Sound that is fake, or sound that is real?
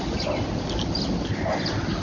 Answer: real